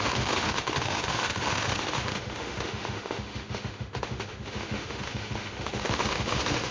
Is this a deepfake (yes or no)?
yes